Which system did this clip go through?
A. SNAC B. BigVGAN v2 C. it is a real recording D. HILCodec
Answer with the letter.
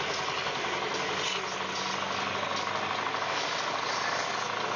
C